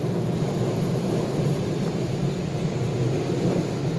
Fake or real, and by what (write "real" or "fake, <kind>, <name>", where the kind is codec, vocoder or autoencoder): real